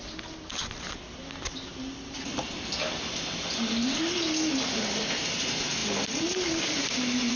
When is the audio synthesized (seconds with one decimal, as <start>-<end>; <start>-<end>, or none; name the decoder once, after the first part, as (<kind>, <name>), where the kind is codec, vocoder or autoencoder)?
none